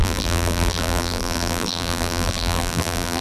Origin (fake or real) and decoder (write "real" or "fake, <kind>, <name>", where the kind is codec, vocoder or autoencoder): fake, vocoder, BigVGAN v2